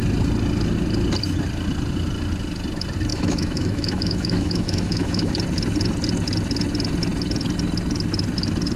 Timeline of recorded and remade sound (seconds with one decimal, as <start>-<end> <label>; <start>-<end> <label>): 0.0-3.1 recorded; 3.1-5.3 remade; 5.3-8.8 recorded